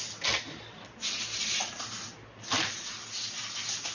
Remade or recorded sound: recorded